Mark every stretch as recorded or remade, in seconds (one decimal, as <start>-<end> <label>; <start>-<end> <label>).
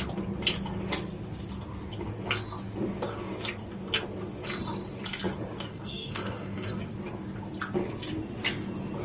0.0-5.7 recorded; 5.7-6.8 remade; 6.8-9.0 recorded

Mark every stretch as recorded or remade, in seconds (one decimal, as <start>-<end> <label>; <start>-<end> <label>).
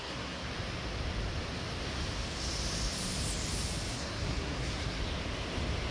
0.0-0.4 remade; 0.4-3.9 recorded; 3.9-5.0 remade; 5.0-5.9 recorded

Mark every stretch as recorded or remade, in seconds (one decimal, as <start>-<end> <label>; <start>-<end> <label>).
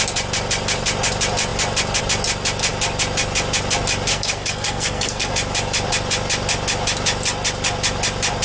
0.0-4.1 recorded; 4.1-5.3 remade; 5.3-8.4 recorded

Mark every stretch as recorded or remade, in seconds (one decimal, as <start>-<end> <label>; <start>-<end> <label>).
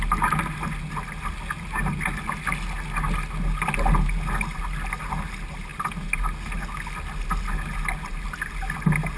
0.0-9.2 recorded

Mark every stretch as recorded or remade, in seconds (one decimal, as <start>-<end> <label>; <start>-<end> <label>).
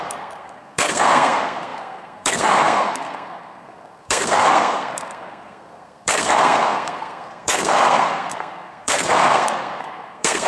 0.0-10.5 remade